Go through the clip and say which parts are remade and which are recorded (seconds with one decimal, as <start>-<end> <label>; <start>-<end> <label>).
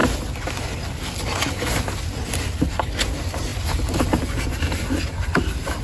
0.0-5.8 recorded